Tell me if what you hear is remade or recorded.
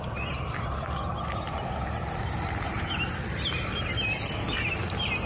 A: recorded